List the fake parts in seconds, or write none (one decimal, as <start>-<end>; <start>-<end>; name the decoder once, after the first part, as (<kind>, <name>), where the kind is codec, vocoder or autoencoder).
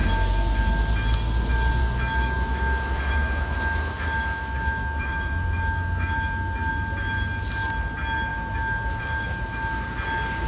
0.0-0.8 (autoencoder, DAC-VAE); 1.8-6.7; 8.3-9.8